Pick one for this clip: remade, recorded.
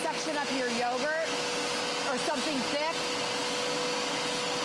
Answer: recorded